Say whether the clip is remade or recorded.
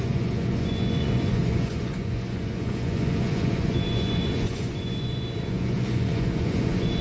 remade